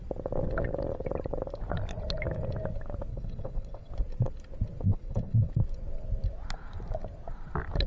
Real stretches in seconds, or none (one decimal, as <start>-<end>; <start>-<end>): 0.0-3.1; 3.9-4.9; 5.5-7.9